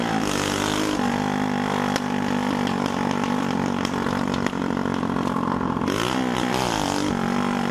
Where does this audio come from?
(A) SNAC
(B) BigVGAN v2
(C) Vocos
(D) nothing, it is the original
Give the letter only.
D